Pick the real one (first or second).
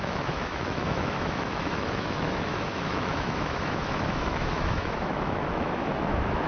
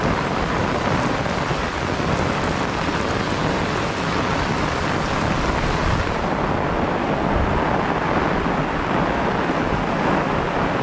second